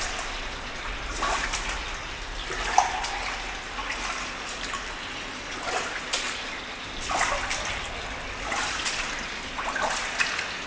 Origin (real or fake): real